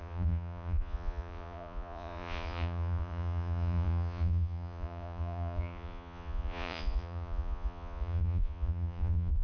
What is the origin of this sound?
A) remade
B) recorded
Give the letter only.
A